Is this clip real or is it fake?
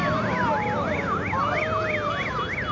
real